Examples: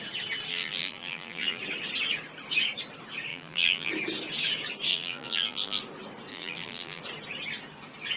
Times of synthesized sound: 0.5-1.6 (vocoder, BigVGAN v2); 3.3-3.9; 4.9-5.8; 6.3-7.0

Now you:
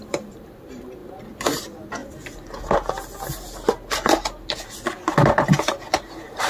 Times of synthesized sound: 0.0-1.0 (vocoder, BigVGAN v2); 1.6-2.0; 5.9-6.5

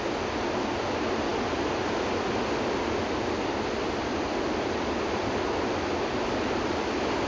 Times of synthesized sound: none

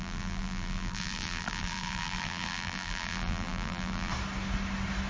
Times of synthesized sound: 0.0-4.1 (vocoder, BigVGAN v2)

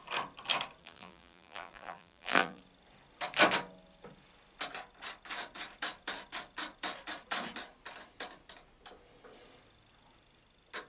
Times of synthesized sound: 0.8-2.6 (vocoder, BigVGAN v2)